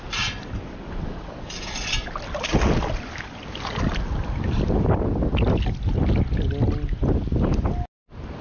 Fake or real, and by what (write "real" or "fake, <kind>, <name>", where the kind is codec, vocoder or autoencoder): real